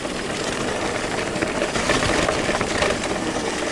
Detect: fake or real real